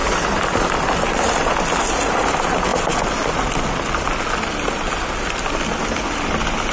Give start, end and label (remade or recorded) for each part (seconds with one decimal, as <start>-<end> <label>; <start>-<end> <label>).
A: 0.0-1.3 remade; 1.3-6.7 recorded